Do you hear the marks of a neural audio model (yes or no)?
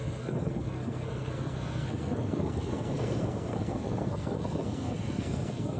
yes